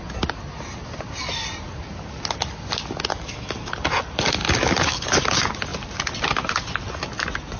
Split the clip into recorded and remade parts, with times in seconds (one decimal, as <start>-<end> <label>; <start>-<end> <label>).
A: 0.0-3.1 recorded; 3.1-3.7 remade; 3.7-7.6 recorded